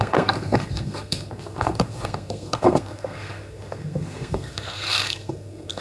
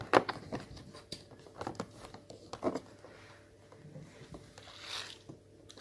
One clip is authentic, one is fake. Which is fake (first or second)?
first